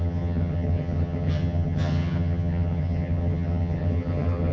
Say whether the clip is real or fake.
fake